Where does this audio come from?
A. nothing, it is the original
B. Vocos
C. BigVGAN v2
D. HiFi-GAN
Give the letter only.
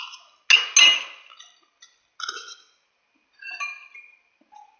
A